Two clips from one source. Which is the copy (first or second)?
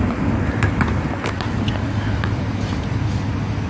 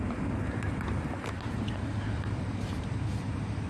second